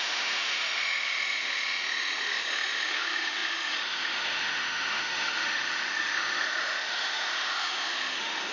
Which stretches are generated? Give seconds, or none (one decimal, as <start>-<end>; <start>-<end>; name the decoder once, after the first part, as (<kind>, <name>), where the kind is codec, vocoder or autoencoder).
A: 0.0-8.5 (autoencoder, DAC-VAE)